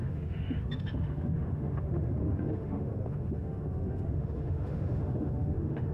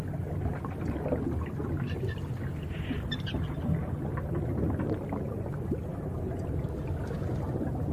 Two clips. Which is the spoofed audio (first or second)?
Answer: first